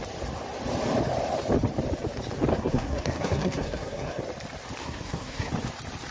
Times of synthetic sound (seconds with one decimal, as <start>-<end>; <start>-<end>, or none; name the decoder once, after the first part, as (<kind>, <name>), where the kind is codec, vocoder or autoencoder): 2.5-4.2 (codec, SNAC); 4.8-5.5